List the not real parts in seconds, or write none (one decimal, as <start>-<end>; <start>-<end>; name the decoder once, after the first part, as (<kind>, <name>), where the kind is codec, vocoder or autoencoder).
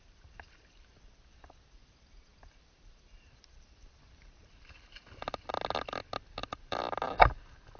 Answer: 2.3-5.5 (vocoder, BigVGAN v2); 6.4-6.9